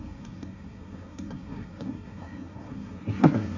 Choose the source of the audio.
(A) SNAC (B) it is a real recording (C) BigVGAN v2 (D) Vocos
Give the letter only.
A